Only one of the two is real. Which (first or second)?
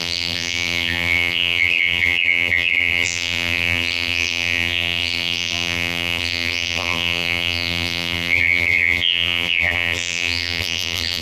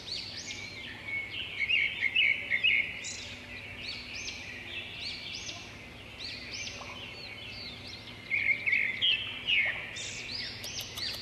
second